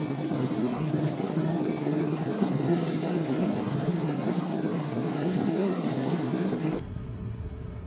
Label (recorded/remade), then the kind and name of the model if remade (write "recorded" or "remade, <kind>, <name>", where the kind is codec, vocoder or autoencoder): remade, codec, SNAC